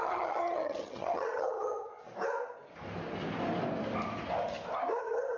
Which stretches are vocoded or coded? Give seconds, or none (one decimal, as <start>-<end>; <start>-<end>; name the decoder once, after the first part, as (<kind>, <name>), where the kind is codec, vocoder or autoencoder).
0.0-1.9 (vocoder, HiFi-GAN); 5.0-5.4